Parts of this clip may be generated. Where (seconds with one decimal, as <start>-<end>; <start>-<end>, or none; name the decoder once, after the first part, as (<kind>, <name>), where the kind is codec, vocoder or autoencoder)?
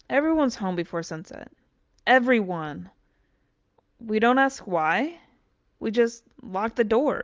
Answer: none